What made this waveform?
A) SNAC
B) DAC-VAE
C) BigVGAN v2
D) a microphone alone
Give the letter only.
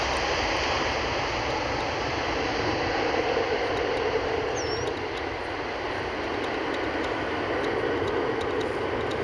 D